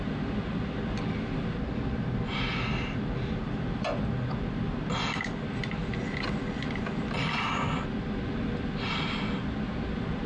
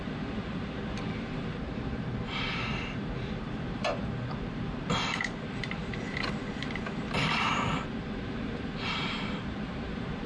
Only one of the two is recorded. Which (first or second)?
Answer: first